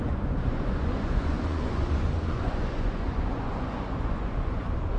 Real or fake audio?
fake